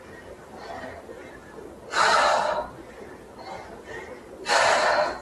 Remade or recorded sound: recorded